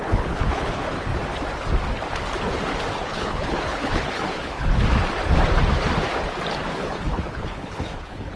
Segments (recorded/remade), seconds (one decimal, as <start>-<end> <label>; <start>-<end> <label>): 0.0-1.1 remade; 1.1-3.0 recorded; 3.0-4.7 remade; 4.7-6.7 recorded; 6.7-8.4 remade